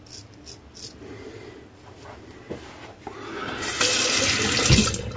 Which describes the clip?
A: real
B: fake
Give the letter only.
A